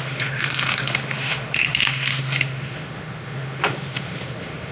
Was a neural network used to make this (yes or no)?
yes